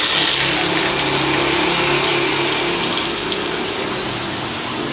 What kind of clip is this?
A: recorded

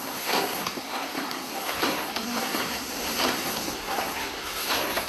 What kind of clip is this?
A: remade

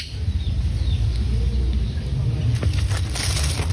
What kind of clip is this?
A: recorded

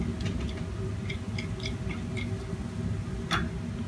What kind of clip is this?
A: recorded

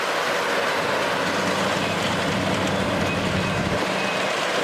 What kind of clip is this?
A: recorded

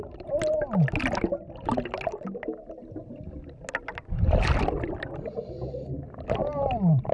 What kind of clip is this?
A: recorded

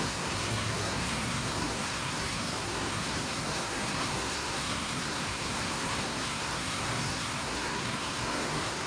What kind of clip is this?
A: remade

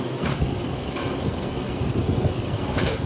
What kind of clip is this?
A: remade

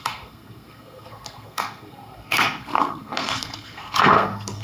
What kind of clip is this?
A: remade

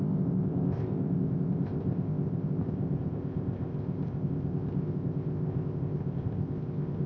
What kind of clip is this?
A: remade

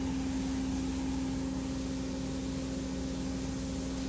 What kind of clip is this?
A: recorded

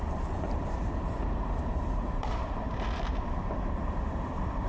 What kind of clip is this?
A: remade